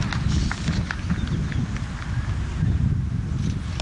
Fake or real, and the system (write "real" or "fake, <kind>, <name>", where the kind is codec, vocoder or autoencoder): real